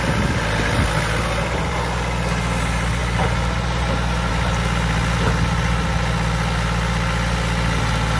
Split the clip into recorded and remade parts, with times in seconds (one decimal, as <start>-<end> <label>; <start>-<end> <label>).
0.0-8.2 recorded